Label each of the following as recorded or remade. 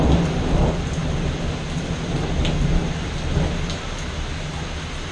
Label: recorded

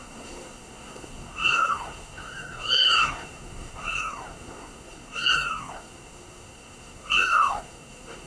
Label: remade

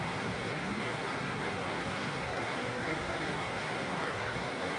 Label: remade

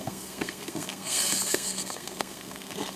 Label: remade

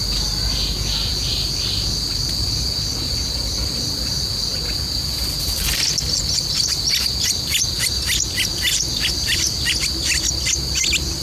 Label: recorded